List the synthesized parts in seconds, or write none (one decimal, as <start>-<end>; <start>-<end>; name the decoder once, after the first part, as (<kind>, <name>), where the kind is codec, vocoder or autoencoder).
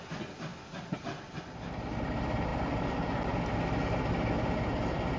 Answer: none